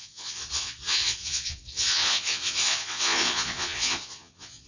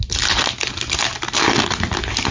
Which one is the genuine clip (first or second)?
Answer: second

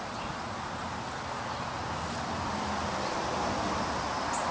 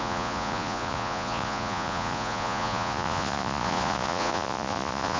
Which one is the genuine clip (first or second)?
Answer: first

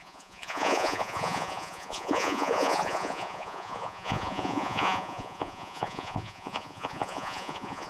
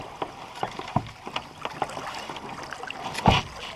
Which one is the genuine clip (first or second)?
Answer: second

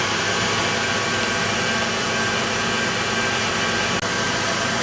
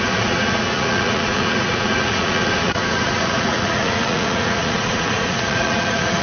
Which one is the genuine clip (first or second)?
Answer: first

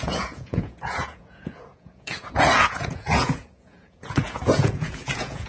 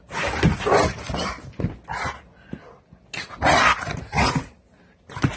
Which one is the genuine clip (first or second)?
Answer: second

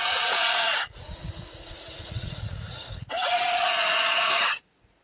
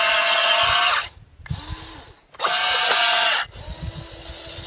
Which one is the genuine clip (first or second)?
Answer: second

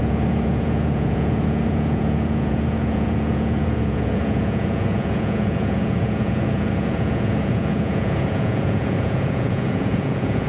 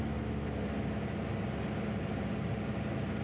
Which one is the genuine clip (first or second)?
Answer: second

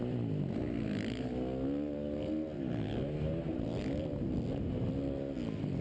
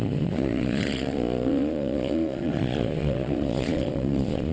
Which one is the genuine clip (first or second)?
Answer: first